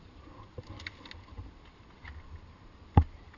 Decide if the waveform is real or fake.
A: real